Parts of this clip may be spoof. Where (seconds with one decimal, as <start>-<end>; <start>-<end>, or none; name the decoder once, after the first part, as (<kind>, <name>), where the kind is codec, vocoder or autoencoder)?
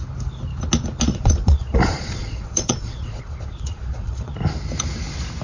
1.1-4.3 (vocoder, Vocos)